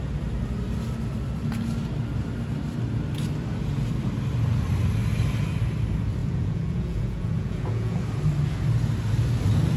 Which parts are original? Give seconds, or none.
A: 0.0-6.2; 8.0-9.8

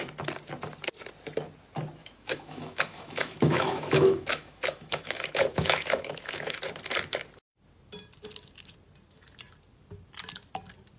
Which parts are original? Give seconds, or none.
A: 0.0-2.0; 6.6-11.0

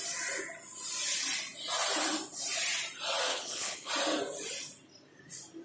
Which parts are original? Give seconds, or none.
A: 0.0-3.3; 3.9-5.6

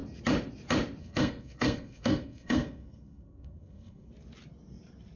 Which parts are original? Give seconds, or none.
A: 0.0-1.0; 4.1-5.2

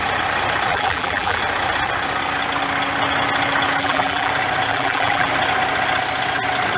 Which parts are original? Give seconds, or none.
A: 0.0-0.7; 1.4-3.8; 4.3-4.7; 5.3-6.8

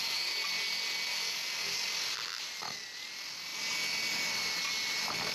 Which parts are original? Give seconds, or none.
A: 0.0-5.3